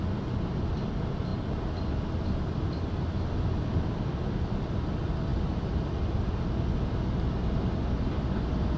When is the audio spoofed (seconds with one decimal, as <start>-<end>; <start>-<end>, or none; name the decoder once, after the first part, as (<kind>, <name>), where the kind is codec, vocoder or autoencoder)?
none

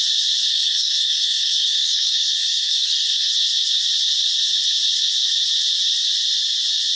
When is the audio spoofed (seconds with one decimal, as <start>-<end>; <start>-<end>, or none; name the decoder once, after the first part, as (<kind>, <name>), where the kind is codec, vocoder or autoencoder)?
0.5-3.3 (codec, SNAC)